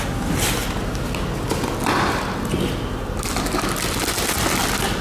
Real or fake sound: real